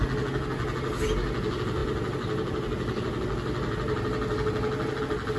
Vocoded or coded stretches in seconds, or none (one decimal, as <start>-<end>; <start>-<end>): none